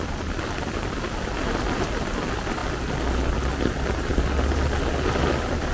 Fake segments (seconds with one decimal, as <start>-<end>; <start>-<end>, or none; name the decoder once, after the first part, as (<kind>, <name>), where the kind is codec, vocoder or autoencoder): none